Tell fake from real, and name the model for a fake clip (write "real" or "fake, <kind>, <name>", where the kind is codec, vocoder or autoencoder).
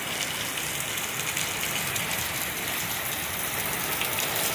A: real